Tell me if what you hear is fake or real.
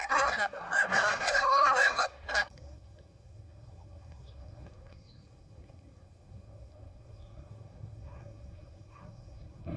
fake